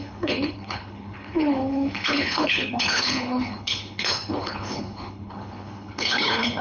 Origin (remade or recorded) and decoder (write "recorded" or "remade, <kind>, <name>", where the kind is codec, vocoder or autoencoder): remade, codec, HILCodec